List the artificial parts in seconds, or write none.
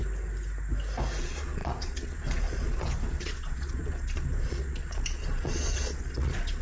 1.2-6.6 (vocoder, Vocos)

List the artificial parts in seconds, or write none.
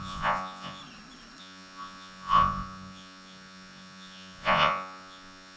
0.0-0.8 (vocoder, Vocos); 1.4-5.6